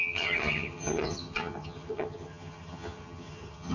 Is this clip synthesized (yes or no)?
yes